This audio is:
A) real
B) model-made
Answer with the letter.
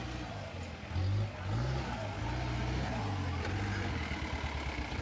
A